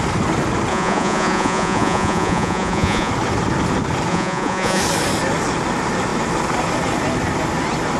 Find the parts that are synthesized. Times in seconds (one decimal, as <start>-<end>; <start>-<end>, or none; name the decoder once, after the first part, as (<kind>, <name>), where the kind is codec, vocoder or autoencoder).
0.7-3.1 (vocoder, Vocos); 4.1-4.8